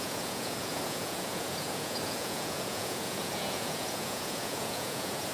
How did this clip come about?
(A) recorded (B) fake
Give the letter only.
B